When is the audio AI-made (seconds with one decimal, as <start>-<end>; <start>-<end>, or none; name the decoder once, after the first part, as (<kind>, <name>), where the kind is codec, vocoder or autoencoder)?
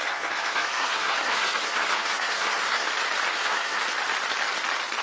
0.0-2.9 (codec, SNAC); 3.3-3.8